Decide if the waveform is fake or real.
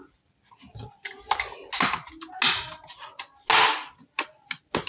real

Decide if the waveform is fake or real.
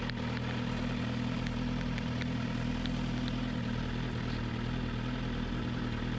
real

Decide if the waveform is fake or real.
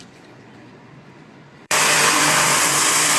fake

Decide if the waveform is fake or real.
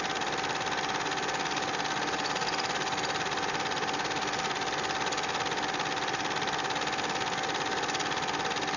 real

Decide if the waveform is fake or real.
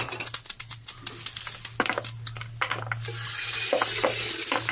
real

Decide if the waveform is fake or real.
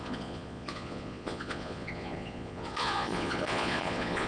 fake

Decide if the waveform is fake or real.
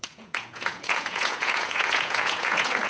fake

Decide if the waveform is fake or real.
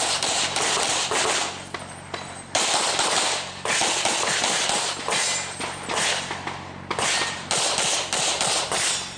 real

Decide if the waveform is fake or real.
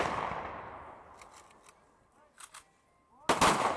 real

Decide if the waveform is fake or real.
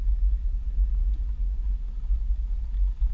real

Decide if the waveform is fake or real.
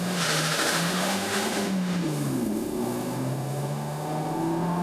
fake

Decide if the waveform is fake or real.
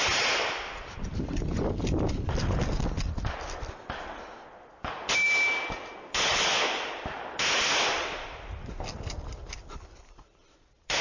real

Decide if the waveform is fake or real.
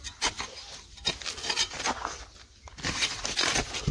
real